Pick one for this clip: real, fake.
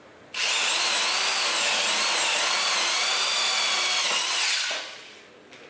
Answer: real